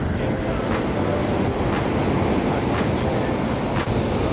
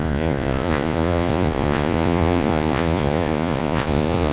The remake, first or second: second